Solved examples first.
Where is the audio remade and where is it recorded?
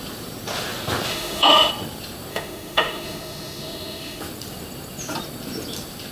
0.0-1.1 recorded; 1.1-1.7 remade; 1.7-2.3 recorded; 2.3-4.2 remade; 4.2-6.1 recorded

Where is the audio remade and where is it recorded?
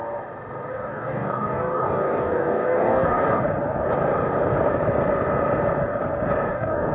0.0-0.7 recorded; 0.7-3.3 remade; 3.3-6.5 recorded; 6.5-6.9 remade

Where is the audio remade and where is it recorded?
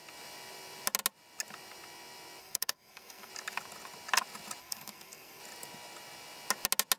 0.0-2.4 recorded; 2.4-3.3 remade; 3.3-4.6 recorded; 4.6-5.4 remade; 5.4-7.0 recorded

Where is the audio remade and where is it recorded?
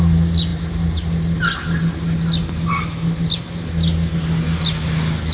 0.0-5.3 recorded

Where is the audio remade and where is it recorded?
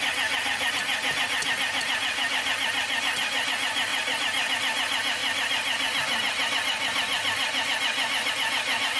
0.0-9.0 recorded